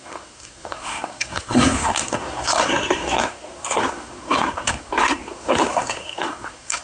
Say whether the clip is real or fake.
fake